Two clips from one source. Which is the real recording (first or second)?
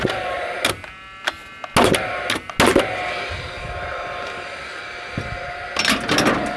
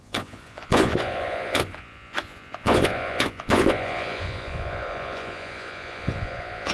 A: first